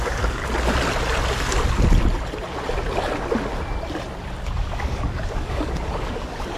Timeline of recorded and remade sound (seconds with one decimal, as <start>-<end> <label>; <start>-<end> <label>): 0.0-0.4 remade; 0.4-4.4 recorded; 4.4-6.6 remade